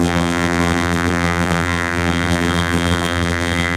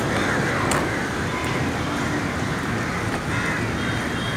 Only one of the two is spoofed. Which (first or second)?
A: first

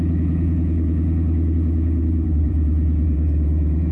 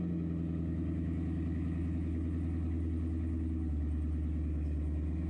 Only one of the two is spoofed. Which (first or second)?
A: first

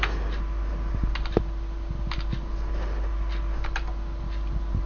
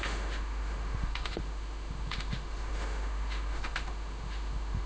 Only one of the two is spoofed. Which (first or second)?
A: second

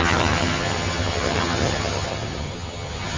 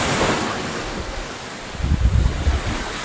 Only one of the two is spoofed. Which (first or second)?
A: first